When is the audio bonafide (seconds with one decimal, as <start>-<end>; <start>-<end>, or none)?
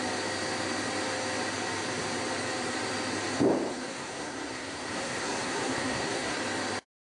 0.0-3.7; 6.4-7.1